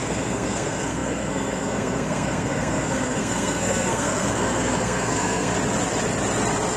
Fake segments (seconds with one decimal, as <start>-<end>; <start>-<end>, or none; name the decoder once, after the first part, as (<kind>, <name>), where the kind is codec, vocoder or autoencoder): 0.0-5.5 (codec, SNAC)